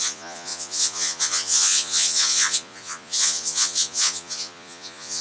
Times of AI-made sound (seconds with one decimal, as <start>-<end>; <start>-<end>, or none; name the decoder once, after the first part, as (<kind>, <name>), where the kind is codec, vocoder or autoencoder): 0.0-5.2 (vocoder, Vocos)